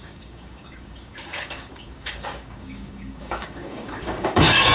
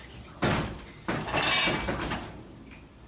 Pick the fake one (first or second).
first